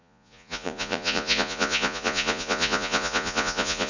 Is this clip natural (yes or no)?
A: no